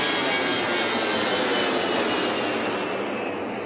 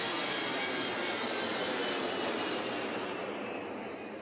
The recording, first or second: first